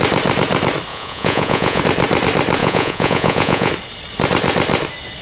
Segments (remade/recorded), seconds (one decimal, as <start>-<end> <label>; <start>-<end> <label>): 0.0-0.9 recorded; 0.9-1.8 remade; 1.8-2.6 recorded; 2.6-3.7 remade; 3.7-5.2 recorded